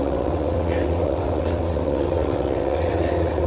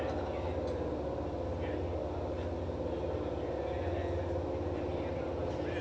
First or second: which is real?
second